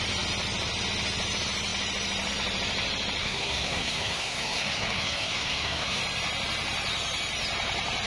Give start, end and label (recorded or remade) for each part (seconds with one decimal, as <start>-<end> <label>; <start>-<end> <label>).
0.0-3.2 recorded; 3.2-6.0 remade; 6.0-8.1 recorded